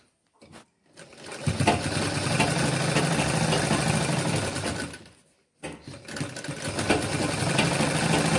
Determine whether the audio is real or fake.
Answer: real